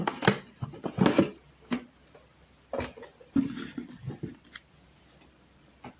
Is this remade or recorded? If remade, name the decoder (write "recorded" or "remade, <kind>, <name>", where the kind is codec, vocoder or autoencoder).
recorded